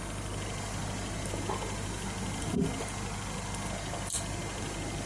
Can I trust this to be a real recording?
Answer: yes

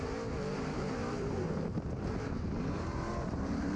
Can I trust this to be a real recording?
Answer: no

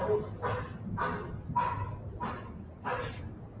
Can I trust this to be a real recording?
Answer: yes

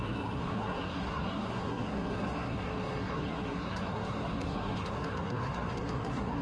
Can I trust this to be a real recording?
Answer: no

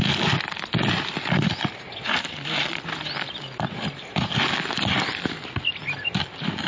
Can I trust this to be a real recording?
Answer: yes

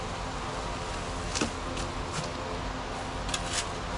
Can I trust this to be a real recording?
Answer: yes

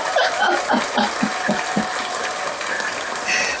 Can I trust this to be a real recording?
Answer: yes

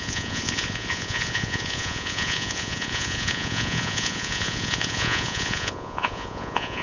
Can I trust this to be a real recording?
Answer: no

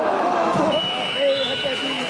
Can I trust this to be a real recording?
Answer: no